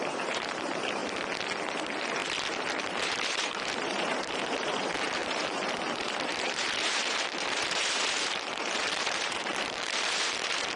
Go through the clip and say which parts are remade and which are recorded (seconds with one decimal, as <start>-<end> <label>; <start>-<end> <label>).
0.0-1.0 remade; 1.0-1.8 recorded; 1.8-10.8 remade